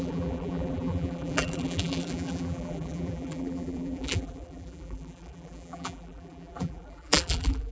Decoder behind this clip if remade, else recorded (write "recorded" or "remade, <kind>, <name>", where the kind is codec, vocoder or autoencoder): remade, vocoder, BigVGAN v2